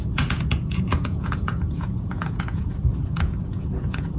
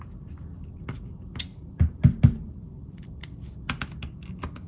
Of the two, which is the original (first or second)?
second